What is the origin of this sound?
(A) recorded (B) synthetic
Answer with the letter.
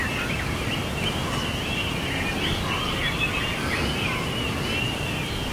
A